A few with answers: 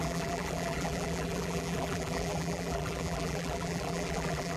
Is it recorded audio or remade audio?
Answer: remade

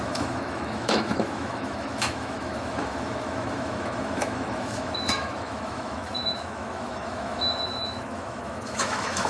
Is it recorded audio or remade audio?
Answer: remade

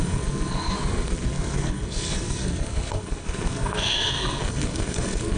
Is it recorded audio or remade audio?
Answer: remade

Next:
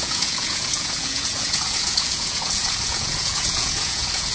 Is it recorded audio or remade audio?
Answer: remade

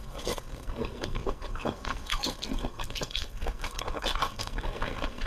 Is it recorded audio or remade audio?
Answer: remade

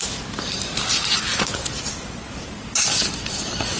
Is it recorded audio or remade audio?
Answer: remade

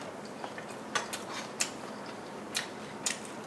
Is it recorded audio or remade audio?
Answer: recorded